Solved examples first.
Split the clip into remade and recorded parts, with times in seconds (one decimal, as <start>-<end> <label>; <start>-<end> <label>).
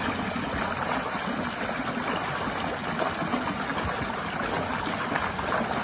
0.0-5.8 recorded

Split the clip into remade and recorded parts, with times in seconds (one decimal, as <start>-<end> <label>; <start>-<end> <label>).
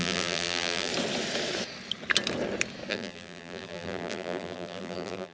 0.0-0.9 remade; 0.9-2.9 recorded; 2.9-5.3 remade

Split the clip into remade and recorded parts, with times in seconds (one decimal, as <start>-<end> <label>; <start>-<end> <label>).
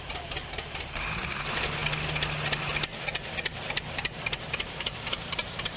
0.0-1.8 remade; 1.8-3.8 recorded; 3.8-5.8 remade